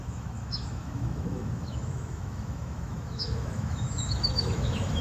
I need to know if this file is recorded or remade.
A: remade